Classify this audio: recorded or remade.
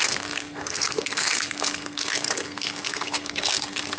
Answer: remade